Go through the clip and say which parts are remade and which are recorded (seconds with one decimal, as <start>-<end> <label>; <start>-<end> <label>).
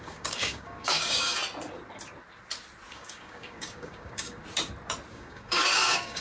0.0-1.4 remade; 1.4-2.9 recorded; 2.9-4.4 remade; 4.4-5.1 recorded; 5.1-6.2 remade